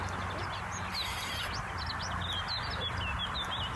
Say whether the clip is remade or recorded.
recorded